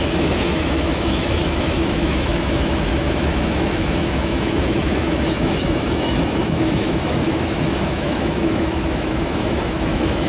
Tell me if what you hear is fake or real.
fake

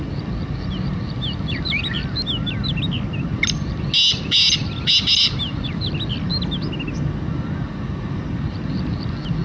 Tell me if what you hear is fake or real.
real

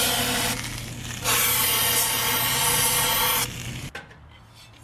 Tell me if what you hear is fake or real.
real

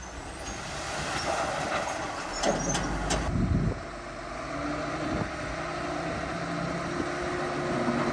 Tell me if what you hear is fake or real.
real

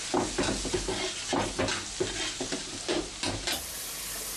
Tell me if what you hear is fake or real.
real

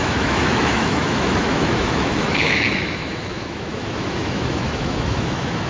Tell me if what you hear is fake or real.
fake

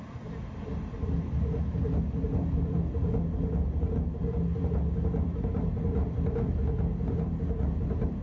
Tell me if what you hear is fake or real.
real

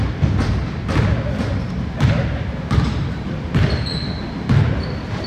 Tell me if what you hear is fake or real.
real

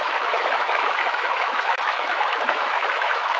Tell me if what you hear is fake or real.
fake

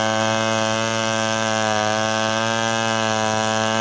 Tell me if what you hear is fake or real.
real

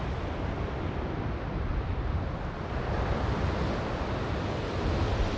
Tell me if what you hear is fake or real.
real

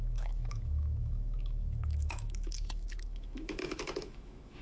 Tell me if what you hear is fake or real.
fake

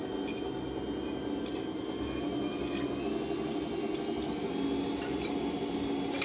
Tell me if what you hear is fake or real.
real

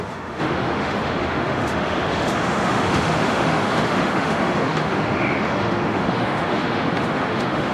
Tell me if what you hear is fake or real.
fake